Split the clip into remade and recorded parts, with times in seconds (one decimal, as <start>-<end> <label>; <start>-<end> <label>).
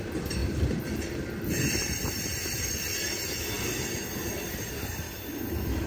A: 0.0-0.4 recorded; 0.4-3.6 remade; 3.6-5.9 recorded